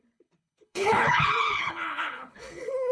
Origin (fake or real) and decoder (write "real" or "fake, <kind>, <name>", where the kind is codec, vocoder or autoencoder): fake, codec, HILCodec